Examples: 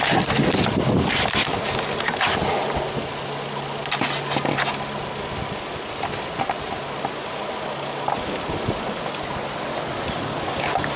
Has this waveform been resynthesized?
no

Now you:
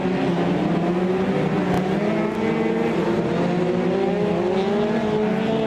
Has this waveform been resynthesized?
no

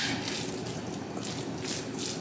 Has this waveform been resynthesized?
no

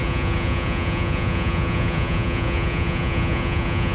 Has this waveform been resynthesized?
yes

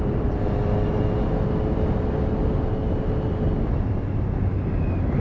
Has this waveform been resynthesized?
no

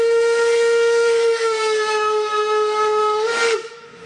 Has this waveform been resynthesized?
yes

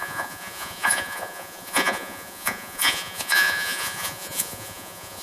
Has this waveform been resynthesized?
yes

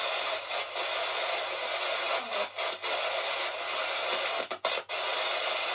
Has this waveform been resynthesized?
no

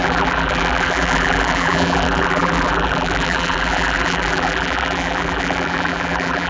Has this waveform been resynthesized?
yes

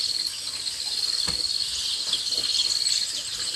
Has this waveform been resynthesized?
no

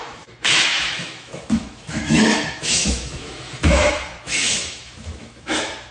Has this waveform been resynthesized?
yes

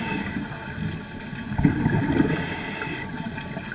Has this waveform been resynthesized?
no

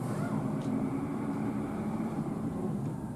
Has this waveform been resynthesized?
yes